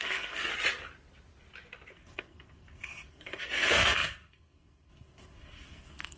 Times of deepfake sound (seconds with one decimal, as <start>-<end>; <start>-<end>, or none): 0.0-0.5; 1.9-6.2